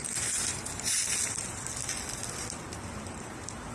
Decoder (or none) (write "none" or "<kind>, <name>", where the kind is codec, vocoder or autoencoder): none